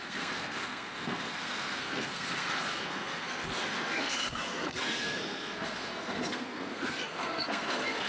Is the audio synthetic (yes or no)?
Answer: yes